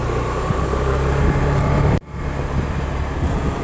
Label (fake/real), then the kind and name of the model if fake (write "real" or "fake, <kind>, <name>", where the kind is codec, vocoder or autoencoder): real